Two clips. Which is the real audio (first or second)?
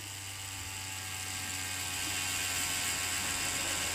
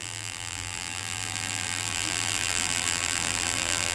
first